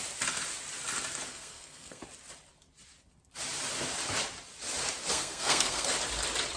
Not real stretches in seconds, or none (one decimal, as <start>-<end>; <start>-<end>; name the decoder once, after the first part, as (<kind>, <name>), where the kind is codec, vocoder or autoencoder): 1.3-2.0 (codec, SNAC); 5.1-5.9